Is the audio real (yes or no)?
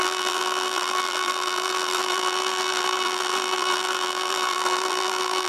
no